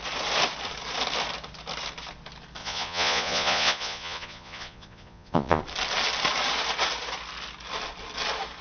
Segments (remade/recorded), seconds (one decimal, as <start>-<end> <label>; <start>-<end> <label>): 0.0-2.6 recorded; 2.6-5.6 remade; 5.6-8.6 recorded

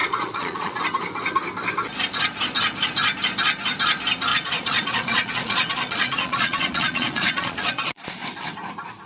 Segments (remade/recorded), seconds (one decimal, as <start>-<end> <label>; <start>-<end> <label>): 0.0-0.8 remade; 0.8-4.3 recorded; 4.3-8.2 remade; 8.2-9.1 recorded

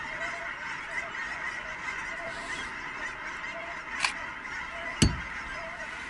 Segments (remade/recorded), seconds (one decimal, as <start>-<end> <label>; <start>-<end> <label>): 0.0-1.2 recorded; 1.2-2.0 remade; 2.0-6.1 recorded

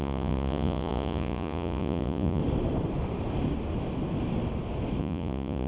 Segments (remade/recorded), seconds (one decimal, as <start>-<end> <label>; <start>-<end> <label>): 0.0-2.4 remade; 2.4-5.0 recorded; 5.0-5.7 remade

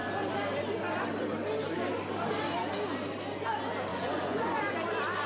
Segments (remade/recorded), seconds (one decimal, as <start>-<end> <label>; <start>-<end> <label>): 0.0-3.9 recorded; 3.9-4.6 remade; 4.6-5.3 recorded